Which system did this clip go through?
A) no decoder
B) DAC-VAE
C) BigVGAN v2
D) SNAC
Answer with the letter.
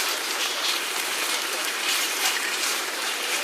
C